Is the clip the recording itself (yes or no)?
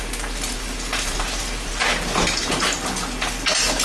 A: yes